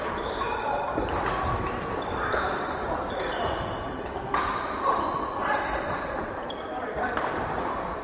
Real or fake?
fake